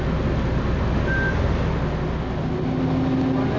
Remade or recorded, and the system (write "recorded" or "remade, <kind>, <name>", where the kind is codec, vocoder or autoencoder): recorded